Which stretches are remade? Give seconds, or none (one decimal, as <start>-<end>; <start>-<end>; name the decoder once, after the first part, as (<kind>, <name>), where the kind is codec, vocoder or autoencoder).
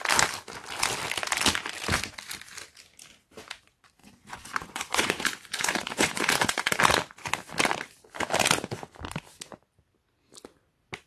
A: 4.0-6.7 (vocoder, Vocos)